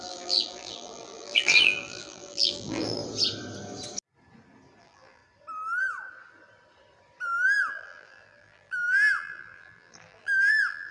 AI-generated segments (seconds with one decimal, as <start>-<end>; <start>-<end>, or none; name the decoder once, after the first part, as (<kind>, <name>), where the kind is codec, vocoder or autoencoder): 0.0-3.0 (vocoder, BigVGAN v2); 4.8-5.2; 7.7-10.9

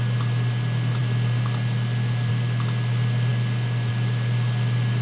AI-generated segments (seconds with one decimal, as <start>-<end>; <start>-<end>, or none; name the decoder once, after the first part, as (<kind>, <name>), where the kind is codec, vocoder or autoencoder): none

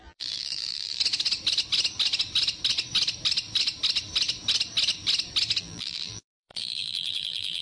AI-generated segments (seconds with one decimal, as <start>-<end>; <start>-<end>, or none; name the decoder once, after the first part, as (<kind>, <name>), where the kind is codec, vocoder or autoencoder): 0.0-1.0 (vocoder, BigVGAN v2); 5.6-7.6